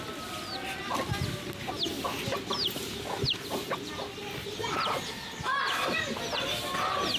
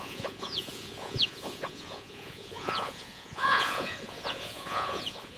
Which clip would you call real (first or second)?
first